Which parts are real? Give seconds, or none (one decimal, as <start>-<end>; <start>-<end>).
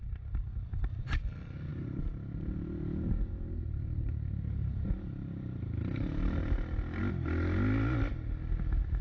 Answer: 0.0-1.7; 7.0-9.0